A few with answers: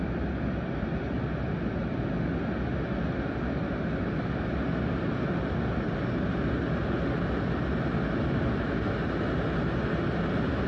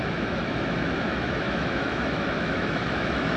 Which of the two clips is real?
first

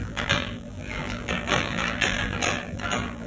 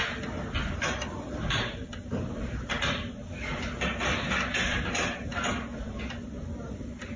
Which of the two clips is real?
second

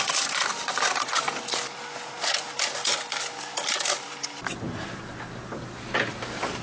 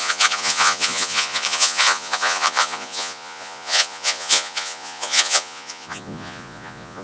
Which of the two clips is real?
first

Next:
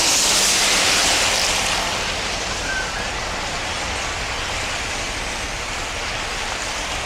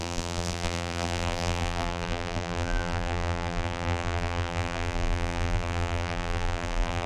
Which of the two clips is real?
first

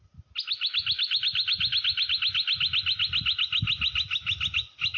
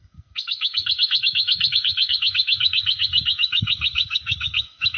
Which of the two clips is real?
first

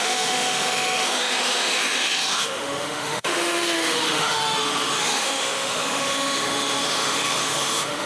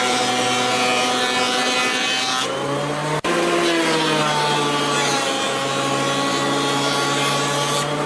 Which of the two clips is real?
second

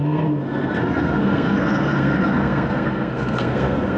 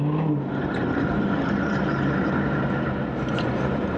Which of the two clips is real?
second